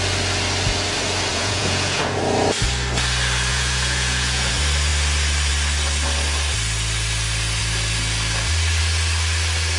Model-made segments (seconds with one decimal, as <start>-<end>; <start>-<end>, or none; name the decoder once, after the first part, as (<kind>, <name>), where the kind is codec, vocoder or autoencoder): 1.3-2.2 (vocoder, Vocos); 3.5-4.5